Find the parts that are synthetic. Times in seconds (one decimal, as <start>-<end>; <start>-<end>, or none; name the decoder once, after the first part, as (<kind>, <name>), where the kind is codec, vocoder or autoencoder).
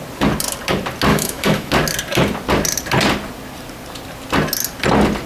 1.1-1.7 (autoencoder, DAC-VAE)